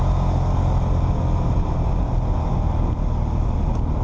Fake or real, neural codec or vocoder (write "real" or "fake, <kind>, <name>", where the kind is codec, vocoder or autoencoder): real